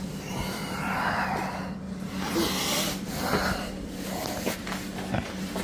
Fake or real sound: real